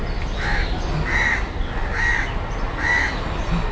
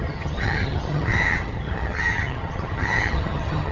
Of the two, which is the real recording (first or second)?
first